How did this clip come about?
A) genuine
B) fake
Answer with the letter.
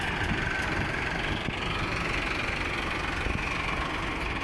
A